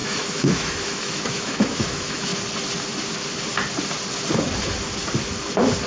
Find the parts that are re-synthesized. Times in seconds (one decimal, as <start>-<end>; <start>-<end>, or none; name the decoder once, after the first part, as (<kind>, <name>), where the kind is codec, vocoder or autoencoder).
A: 0.0-2.3 (autoencoder, DAC-VAE)